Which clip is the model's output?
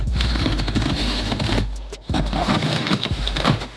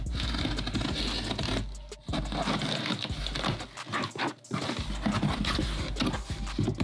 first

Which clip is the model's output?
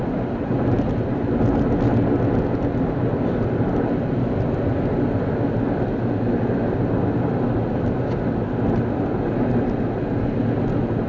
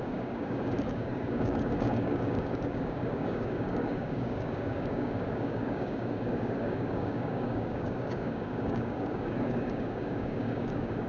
second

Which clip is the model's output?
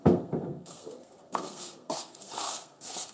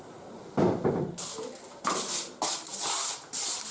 first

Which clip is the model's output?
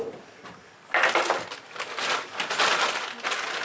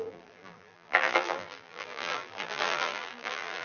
second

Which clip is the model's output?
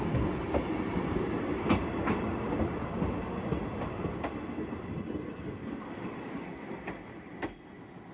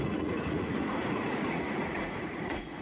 second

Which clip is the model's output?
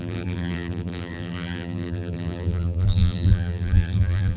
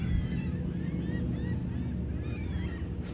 first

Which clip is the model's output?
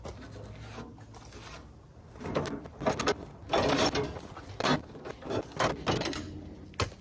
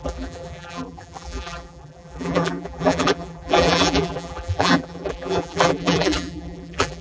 second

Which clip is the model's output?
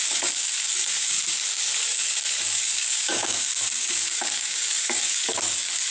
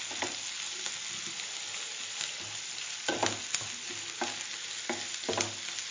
first